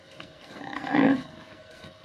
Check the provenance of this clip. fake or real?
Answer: fake